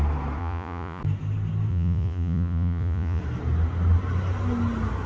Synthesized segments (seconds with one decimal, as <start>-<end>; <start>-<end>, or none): 0.4-1.0; 1.7-3.2